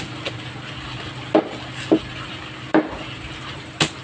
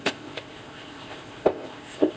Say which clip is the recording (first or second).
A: first